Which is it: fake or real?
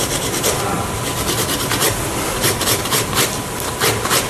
fake